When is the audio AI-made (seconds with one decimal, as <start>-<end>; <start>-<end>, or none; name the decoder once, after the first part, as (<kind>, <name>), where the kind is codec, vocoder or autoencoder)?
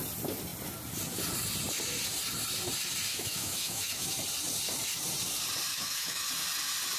3.1-4.1 (autoencoder, DAC-VAE); 5.7-6.3